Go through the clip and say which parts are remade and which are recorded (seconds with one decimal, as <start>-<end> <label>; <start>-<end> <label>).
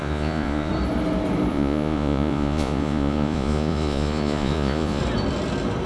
0.0-0.7 remade; 0.7-1.5 recorded; 1.5-5.0 remade; 5.0-5.9 recorded